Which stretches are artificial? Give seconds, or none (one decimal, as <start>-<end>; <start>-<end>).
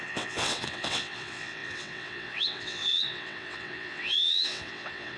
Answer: 0.0-5.2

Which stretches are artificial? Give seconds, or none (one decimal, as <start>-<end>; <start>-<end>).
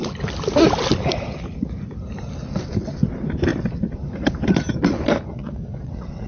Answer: 5.3-6.3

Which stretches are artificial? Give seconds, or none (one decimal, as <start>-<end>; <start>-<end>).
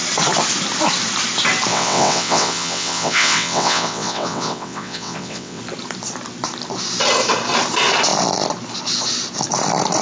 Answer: 1.7-5.6